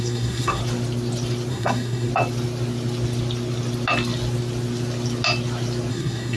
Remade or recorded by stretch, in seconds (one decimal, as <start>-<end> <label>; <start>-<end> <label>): 0.0-0.6 remade; 0.6-1.5 recorded; 1.5-2.1 remade; 2.1-5.9 recorded; 5.9-6.4 remade

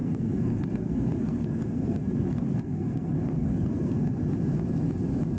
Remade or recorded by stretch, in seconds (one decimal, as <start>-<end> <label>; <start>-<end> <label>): 0.0-4.2 remade; 4.2-5.4 recorded

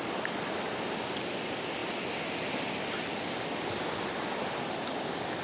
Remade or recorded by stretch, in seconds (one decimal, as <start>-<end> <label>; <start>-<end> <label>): 0.0-5.4 recorded

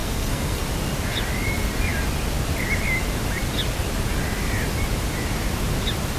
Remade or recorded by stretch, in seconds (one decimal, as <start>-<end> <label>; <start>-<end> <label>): 0.0-0.6 remade; 0.6-6.2 recorded

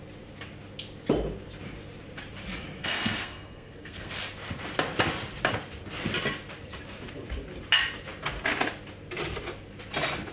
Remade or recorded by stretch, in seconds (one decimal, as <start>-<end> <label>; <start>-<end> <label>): 0.0-2.8 recorded; 2.8-4.2 remade; 4.2-10.3 recorded

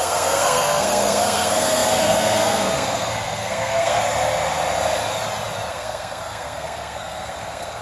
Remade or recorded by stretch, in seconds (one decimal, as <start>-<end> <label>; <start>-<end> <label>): 0.0-4.0 remade; 4.0-5.7 recorded; 5.7-7.8 remade

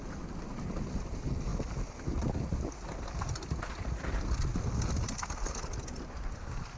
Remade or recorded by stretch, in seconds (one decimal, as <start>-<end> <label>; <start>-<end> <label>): 0.0-6.8 recorded

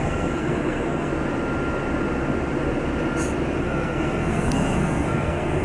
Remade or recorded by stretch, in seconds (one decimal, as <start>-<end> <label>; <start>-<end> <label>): 0.0-1.1 remade; 1.1-3.6 recorded; 3.6-5.6 remade